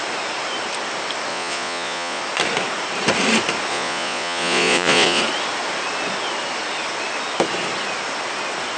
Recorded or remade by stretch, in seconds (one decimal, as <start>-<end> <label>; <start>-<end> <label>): 0.0-1.3 recorded; 1.3-2.2 remade; 2.2-3.7 recorded; 3.7-5.2 remade; 5.2-8.8 recorded